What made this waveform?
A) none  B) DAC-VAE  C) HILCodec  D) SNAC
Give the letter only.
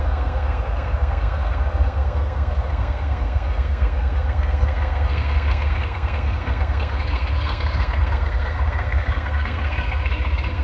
D